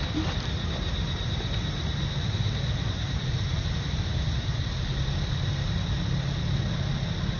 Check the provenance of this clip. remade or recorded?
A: recorded